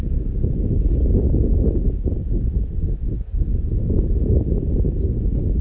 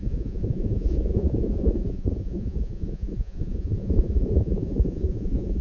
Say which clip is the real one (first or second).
first